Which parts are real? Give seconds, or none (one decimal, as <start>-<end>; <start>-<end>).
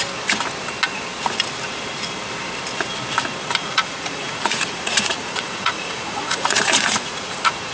0.0-3.6